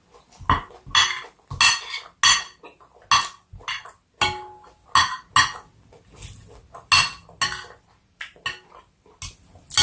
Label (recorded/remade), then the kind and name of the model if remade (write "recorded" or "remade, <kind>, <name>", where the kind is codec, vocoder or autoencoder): recorded